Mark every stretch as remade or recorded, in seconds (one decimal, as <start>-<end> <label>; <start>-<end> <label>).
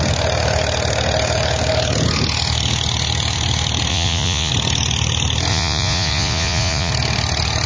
0.0-3.9 recorded; 3.9-4.5 remade; 4.5-5.5 recorded; 5.5-6.9 remade; 6.9-7.7 recorded